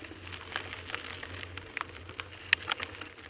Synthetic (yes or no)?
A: no